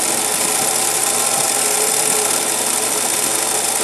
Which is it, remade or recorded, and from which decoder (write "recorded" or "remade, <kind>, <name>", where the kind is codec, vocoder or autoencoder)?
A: recorded